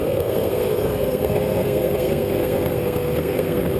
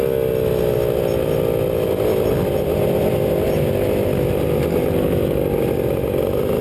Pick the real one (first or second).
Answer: second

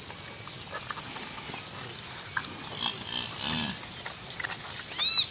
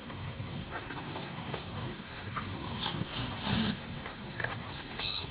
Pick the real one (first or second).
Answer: first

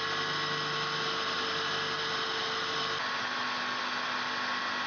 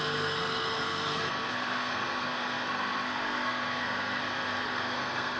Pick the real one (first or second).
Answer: first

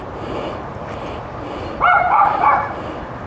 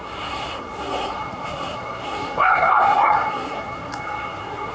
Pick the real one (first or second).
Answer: first